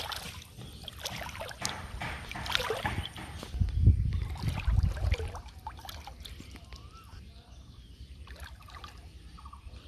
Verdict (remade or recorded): recorded